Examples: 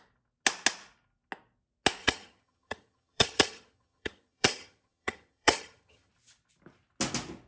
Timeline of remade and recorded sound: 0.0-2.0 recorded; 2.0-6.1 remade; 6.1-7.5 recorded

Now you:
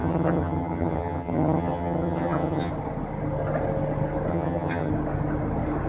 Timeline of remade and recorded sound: 0.0-2.7 remade; 2.7-4.3 recorded; 4.3-4.9 remade; 4.9-5.9 recorded

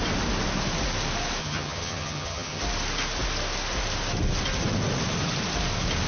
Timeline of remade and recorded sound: 0.0-1.4 recorded; 1.4-2.6 remade; 2.6-6.1 recorded

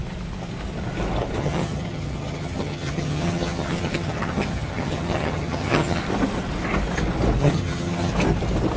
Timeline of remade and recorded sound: 0.0-1.4 recorded; 1.4-6.0 remade; 6.0-7.4 recorded; 7.4-8.1 remade; 8.1-8.8 recorded

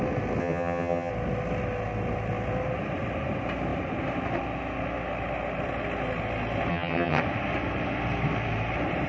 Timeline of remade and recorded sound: 0.0-0.4 recorded; 0.4-1.1 remade; 1.1-6.7 recorded; 6.7-7.2 remade; 7.2-9.1 recorded

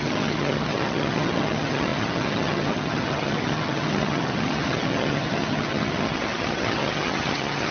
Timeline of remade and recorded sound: 0.0-7.7 remade

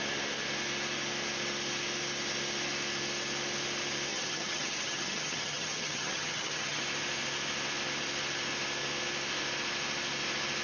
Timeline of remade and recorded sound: 0.0-4.1 recorded; 4.1-6.8 remade; 6.8-10.6 recorded

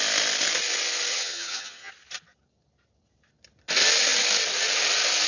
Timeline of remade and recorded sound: 0.0-1.1 recorded; 1.1-1.9 remade; 1.9-5.3 recorded